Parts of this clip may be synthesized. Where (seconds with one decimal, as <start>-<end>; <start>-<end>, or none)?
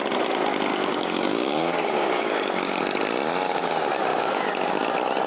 0.7-2.8; 4.1-4.7